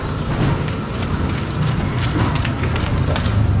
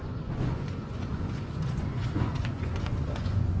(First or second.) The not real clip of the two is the second